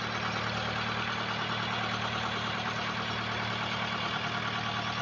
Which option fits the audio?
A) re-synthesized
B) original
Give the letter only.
B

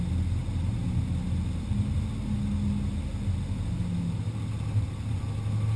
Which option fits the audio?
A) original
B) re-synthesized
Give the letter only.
A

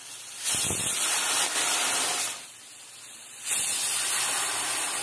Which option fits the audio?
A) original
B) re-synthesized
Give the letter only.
A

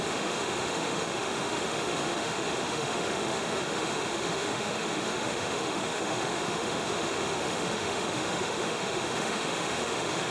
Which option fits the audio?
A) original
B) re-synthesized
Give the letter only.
B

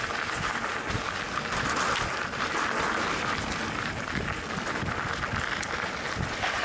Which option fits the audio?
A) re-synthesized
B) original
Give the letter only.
B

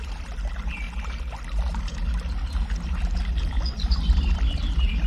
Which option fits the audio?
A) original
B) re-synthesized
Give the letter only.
A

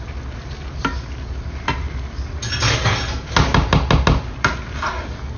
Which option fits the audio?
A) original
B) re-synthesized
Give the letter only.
A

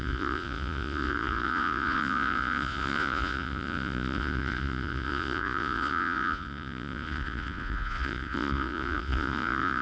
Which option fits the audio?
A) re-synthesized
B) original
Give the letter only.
A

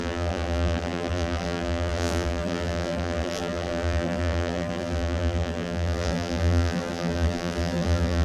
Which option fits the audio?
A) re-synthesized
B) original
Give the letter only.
A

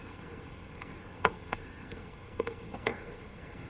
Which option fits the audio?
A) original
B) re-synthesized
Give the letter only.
B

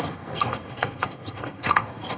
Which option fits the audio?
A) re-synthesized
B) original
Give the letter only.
A